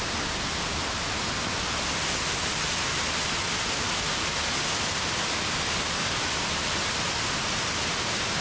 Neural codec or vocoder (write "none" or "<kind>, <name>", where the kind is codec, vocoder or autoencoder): none